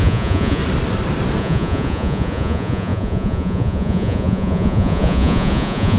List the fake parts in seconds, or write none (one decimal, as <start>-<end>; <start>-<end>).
0.0-0.6; 1.4-6.0